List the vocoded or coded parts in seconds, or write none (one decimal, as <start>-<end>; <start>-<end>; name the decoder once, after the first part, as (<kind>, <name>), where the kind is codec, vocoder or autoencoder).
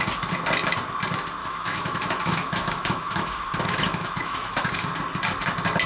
1.4-4.9 (autoencoder, DAC-VAE)